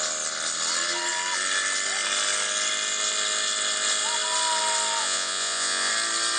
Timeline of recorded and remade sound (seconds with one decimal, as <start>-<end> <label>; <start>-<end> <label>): 0.0-5.0 recorded; 5.0-5.9 remade; 5.9-6.4 recorded

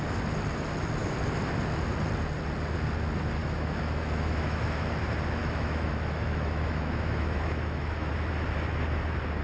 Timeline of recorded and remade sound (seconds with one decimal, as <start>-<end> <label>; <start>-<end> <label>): 0.0-3.4 recorded; 3.4-4.8 remade; 4.8-5.4 recorded; 5.4-8.1 remade; 8.1-9.4 recorded

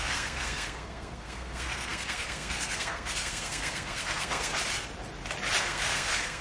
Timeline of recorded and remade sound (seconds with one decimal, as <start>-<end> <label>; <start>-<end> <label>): 0.0-4.5 remade; 4.5-5.6 recorded; 5.6-6.4 remade

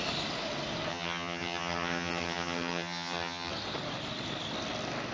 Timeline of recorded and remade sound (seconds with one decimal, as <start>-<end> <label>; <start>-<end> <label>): 0.0-0.9 recorded; 0.9-3.5 remade; 3.5-5.1 recorded